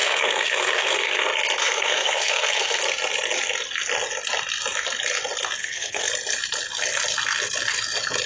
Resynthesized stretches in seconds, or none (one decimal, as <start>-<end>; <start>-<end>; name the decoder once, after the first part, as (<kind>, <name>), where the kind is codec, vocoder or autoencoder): 0.0-1.2 (codec, SNAC); 1.6-2.8; 5.6-6.1